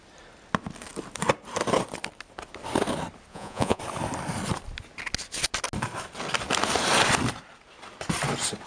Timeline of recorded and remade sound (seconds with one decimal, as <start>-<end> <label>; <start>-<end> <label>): 0.0-3.3 recorded; 3.3-3.8 remade; 3.8-8.7 recorded